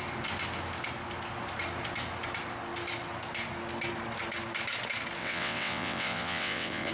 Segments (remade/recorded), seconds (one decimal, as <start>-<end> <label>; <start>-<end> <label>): 0.0-5.2 recorded; 5.2-6.9 remade